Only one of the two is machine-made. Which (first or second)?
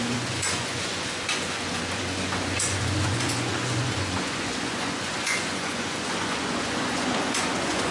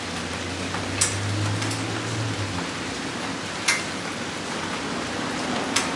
first